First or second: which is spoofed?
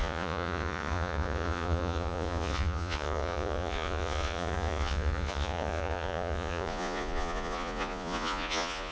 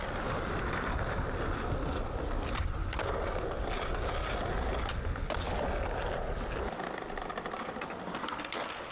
first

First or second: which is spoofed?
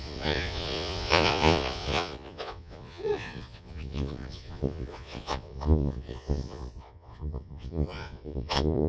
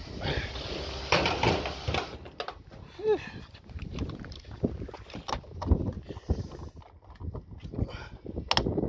first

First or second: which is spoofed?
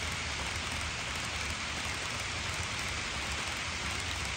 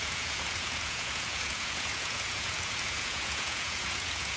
second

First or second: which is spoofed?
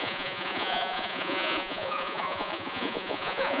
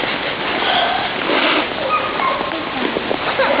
first